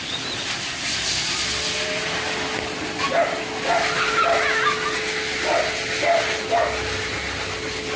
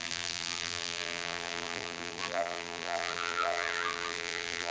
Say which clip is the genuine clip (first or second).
first